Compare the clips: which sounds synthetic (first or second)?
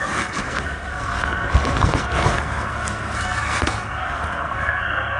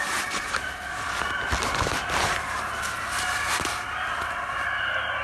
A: first